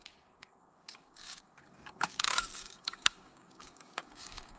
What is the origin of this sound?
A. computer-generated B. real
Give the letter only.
A